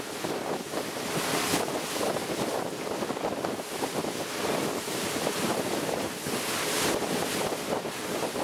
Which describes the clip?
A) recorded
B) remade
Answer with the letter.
A